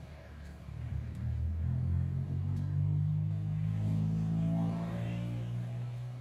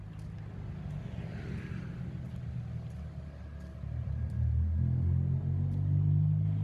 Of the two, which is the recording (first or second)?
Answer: second